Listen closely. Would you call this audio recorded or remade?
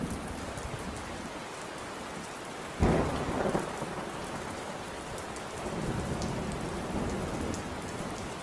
recorded